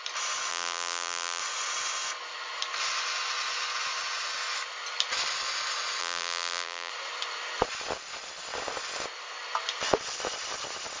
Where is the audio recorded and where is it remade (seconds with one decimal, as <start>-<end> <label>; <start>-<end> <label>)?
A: 0.0-0.5 recorded; 0.5-1.4 remade; 1.4-6.0 recorded; 6.0-6.9 remade; 6.9-11.0 recorded